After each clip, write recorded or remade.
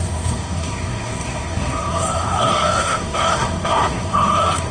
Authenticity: remade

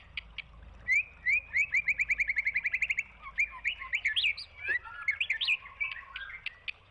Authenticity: recorded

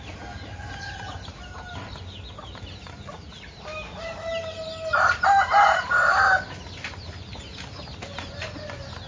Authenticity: recorded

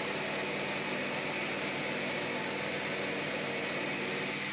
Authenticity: recorded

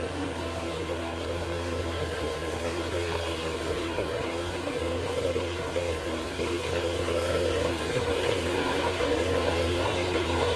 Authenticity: remade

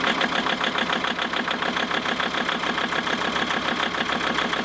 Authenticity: recorded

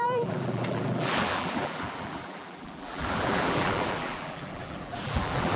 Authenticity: remade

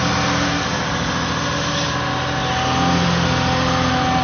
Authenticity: recorded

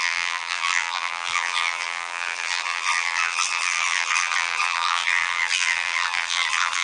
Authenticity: remade